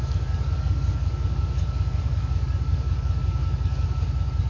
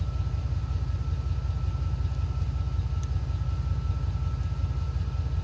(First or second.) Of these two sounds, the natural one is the second